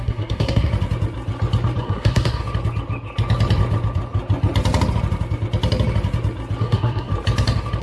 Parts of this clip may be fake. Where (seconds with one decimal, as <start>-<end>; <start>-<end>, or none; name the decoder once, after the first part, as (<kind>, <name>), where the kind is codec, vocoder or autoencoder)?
0.0-0.7 (codec, SNAC); 1.8-2.4; 6.6-7.1